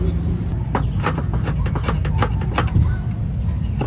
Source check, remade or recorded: recorded